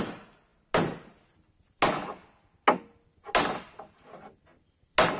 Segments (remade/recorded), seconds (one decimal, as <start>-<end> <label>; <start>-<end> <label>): 0.0-5.2 recorded